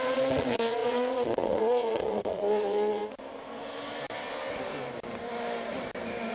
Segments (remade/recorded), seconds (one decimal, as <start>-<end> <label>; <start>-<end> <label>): 0.0-3.0 remade; 3.0-6.3 recorded